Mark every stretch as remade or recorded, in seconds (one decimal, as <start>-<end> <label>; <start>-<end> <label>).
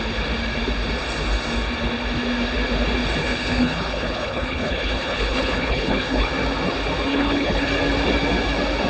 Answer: 0.0-3.2 recorded; 3.2-6.3 remade; 6.3-7.1 recorded; 7.1-7.7 remade; 7.7-8.9 recorded